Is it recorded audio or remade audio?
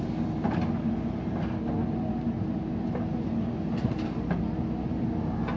recorded